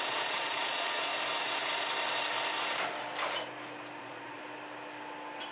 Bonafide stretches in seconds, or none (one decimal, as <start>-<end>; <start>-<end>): 1.1-4.0; 4.4-5.5